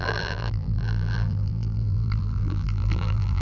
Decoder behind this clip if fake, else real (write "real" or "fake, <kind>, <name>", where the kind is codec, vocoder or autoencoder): fake, vocoder, BigVGAN v2